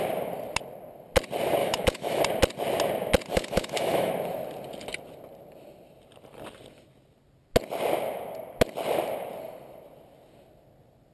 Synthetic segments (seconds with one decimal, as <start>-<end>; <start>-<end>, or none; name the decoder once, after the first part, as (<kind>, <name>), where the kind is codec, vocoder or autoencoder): 1.6-2.2 (autoencoder, DAC-VAE); 3.3-4.1